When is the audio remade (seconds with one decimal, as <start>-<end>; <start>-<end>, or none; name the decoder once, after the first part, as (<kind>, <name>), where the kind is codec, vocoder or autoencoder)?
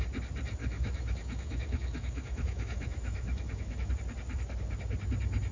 0.6-3.9 (autoencoder, DAC-VAE)